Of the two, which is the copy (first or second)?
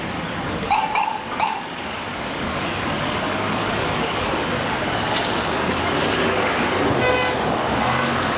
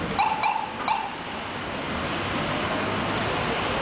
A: first